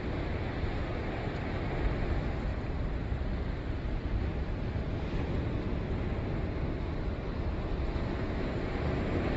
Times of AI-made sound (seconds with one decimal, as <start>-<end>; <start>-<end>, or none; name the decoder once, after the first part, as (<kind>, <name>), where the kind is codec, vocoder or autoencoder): 2.5-4.8 (vocoder, BigVGAN v2)